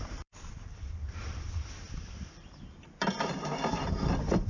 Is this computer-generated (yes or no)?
yes